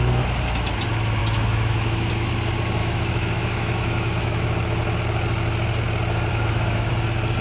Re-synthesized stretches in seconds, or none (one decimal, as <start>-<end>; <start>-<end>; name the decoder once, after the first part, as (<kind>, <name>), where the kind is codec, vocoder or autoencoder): 1.2-2.1 (autoencoder, DAC-VAE); 2.8-4.5; 6.3-6.9